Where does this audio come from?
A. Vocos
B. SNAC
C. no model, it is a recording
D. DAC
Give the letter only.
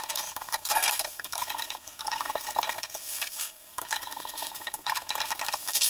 B